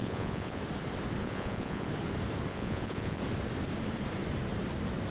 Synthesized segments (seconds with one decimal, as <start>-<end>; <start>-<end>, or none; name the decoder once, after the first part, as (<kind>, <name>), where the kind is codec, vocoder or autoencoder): 0.0-0.6 (vocoder, Vocos); 1.2-1.9; 2.5-3.2